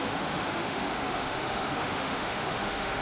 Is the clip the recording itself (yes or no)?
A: no